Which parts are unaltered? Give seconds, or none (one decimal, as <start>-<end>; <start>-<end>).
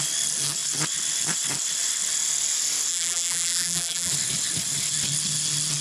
0.0-2.9; 4.1-5.8